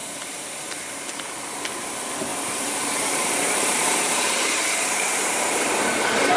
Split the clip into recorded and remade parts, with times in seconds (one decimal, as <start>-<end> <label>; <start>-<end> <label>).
0.0-1.4 remade; 1.4-2.3 recorded; 2.3-6.0 remade; 6.0-6.4 recorded